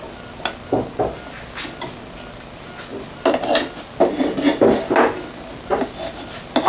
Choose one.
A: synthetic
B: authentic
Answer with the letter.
B